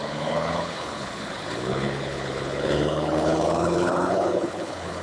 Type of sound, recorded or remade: remade